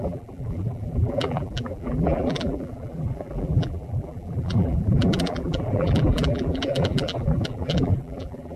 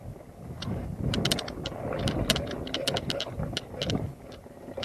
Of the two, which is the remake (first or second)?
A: first